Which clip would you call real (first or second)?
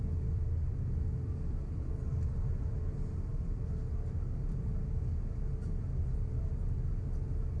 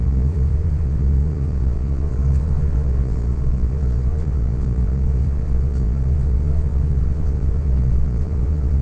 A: first